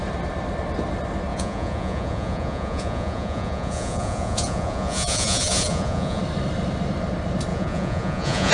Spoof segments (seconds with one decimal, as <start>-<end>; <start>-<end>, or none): 1.3-6.2; 7.5-8.5